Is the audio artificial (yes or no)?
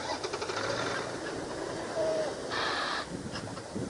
yes